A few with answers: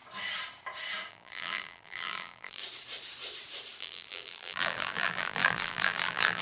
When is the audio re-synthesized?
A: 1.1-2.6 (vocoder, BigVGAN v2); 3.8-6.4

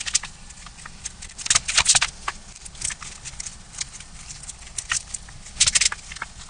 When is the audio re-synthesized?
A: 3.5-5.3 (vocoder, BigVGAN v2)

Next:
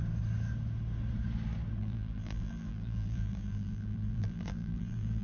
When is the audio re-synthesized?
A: 1.8-5.2 (vocoder, BigVGAN v2)

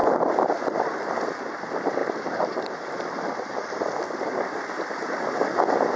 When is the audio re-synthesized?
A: 0.0-0.9 (vocoder, BigVGAN v2); 2.0-5.0